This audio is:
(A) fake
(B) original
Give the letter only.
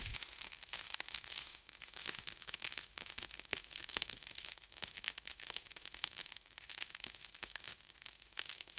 A